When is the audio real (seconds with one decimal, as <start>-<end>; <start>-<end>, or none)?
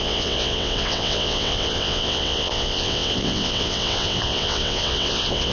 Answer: none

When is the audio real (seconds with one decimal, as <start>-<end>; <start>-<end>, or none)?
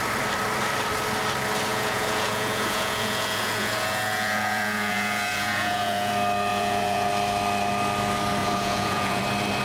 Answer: 0.0-1.7; 6.1-6.5; 7.1-8.4; 9.2-9.6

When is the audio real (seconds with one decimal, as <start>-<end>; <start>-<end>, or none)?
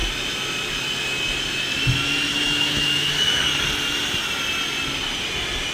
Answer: 0.0-2.3; 3.4-5.7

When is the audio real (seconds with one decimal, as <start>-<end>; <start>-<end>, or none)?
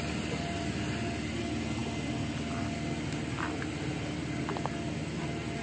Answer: 0.0-5.6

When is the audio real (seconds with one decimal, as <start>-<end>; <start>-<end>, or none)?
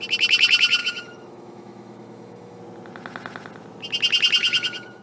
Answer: 0.0-0.8; 2.6-4.4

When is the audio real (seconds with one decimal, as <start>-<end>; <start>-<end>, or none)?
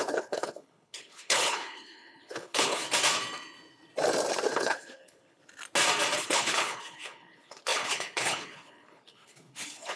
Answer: 2.8-4.5; 5.4-6.2